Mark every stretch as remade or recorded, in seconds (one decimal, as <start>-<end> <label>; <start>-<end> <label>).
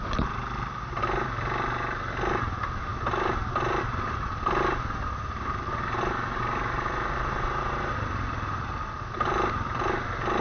0.0-10.4 recorded